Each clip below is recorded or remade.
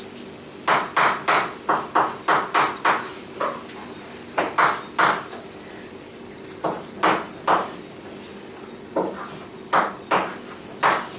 recorded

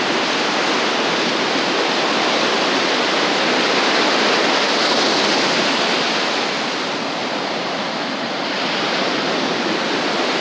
recorded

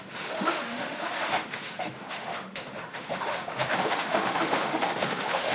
remade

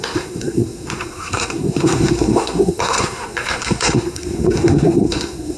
remade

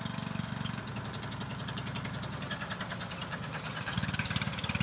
recorded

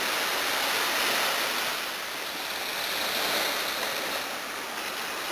recorded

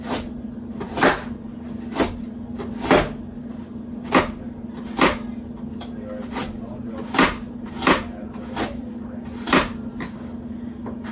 recorded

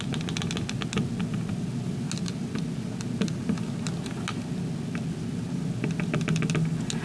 recorded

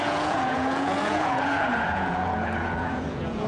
remade